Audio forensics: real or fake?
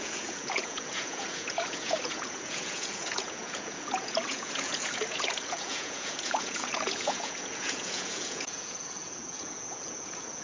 fake